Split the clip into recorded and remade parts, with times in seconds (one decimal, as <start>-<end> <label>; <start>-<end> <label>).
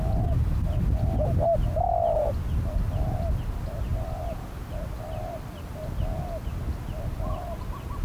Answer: 0.0-8.0 recorded